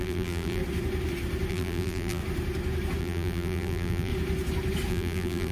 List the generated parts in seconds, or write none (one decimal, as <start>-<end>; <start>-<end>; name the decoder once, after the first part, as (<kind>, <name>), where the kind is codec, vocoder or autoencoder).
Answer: 0.0-0.6 (vocoder, BigVGAN v2); 1.5-2.2; 3.0-4.1; 4.9-5.5